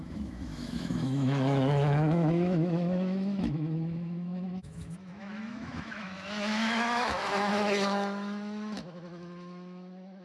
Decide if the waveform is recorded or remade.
remade